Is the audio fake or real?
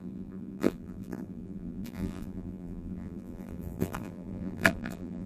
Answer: fake